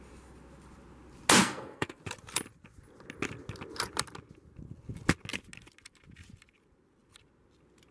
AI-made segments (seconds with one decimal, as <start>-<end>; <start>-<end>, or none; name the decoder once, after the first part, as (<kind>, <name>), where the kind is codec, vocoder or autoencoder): 1.4-2.0 (codec, SNAC)